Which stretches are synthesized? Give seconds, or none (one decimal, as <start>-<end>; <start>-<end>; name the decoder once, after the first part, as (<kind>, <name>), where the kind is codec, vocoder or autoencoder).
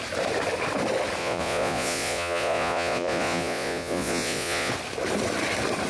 1.2-4.7 (vocoder, Vocos)